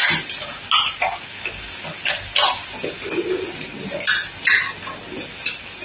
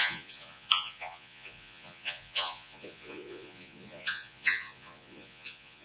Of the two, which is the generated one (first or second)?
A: second